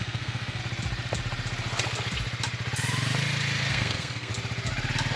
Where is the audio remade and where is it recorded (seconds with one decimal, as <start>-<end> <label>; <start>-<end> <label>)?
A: 0.0-0.6 remade; 0.6-3.7 recorded; 3.7-4.3 remade; 4.3-5.2 recorded